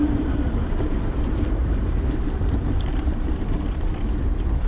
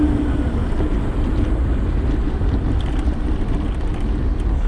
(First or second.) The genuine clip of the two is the second